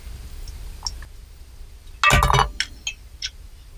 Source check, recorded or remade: recorded